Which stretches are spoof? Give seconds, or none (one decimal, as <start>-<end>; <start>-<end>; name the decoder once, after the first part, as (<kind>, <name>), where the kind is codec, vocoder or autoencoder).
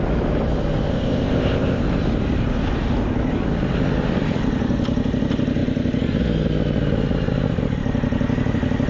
0.9-1.8 (codec, ZipCodec)